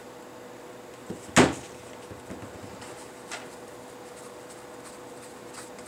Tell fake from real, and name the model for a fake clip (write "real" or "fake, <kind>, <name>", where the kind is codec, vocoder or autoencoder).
real